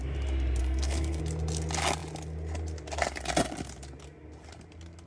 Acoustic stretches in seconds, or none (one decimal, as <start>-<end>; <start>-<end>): 0.0-0.6; 1.2-5.1